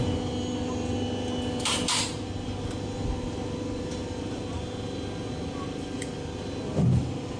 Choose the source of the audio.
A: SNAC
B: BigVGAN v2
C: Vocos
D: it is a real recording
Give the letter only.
D